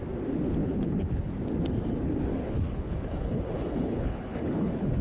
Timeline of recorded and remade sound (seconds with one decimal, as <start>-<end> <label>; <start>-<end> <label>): 0.0-0.6 recorded; 0.6-1.3 remade; 1.3-2.3 recorded; 2.3-5.0 remade